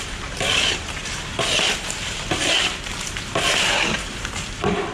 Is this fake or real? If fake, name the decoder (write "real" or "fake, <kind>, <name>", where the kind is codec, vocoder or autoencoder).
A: fake, vocoder, BigVGAN v2